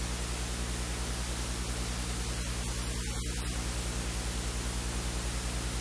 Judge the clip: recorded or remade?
recorded